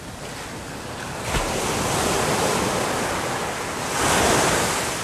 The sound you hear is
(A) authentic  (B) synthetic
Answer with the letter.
A